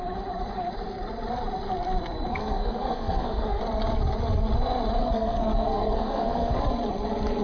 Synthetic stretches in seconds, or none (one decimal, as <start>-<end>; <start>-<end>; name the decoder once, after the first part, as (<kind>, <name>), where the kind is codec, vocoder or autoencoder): 2.3-3.6 (codec, SNAC); 5.0-6.6